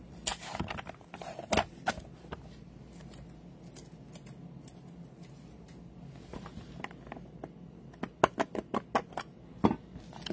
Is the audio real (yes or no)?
yes